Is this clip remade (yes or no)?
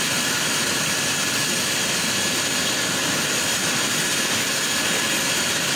no